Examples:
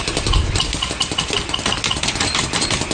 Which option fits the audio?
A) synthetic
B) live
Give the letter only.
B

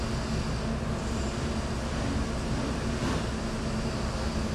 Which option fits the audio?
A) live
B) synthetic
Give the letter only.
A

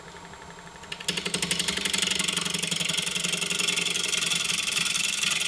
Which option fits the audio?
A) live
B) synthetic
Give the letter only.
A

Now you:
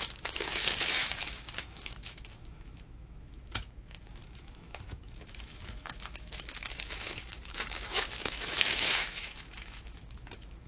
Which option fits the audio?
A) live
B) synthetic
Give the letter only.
B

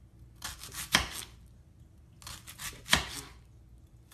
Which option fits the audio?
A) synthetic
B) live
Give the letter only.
B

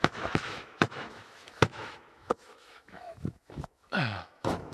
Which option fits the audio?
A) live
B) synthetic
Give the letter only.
B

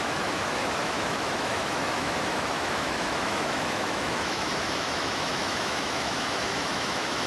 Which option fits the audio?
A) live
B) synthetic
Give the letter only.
B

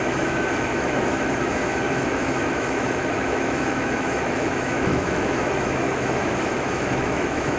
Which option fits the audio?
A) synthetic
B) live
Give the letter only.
A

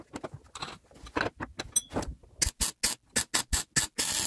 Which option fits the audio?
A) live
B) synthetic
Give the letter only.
A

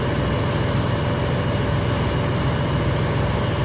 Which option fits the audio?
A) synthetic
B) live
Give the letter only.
B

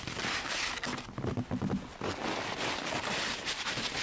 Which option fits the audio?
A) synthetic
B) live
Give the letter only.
B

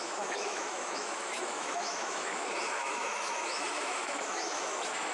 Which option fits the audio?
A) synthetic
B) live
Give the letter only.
A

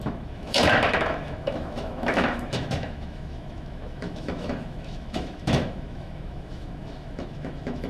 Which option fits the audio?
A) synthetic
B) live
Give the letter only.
A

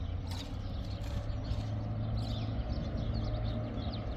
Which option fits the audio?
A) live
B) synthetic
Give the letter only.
A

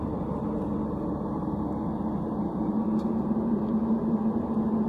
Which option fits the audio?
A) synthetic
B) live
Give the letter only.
B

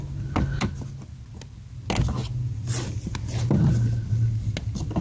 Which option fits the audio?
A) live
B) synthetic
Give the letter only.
A